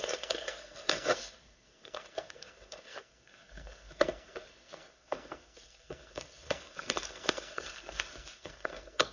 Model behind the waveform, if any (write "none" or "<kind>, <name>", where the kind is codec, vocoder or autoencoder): codec, SNAC